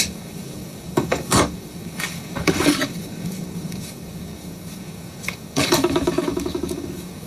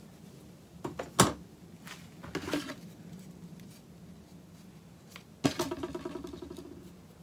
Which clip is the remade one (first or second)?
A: first